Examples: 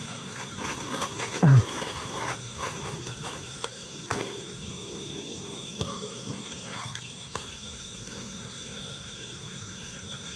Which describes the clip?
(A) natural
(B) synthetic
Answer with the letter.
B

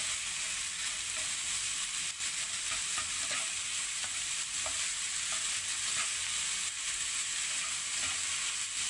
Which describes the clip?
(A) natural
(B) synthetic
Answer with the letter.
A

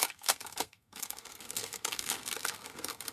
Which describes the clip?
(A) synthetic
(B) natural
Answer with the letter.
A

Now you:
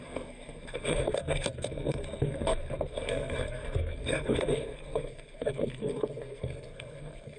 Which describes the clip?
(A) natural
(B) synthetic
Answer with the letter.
B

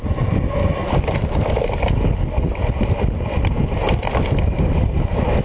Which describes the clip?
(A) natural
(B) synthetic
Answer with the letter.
A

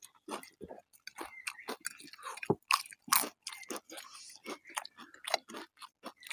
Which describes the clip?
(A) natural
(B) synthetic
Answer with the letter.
A